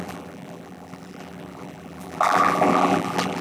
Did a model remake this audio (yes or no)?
yes